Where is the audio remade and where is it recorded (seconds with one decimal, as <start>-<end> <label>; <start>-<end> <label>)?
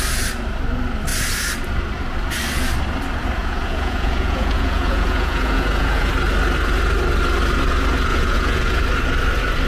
0.0-3.4 recorded; 3.4-6.1 remade; 6.1-8.1 recorded; 8.1-8.8 remade; 8.8-9.7 recorded